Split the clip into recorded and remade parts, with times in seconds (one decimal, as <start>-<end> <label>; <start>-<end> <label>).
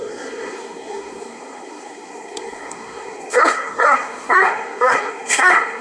0.0-5.8 remade